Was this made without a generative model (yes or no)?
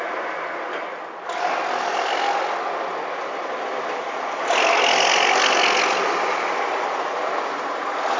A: yes